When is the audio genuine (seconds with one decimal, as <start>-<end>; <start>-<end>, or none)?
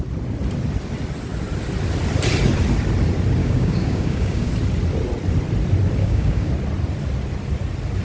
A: 0.0-3.4; 4.5-6.0; 6.5-8.0